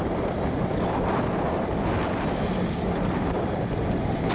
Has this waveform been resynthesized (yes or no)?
no